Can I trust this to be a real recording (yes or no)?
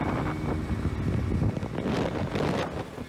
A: yes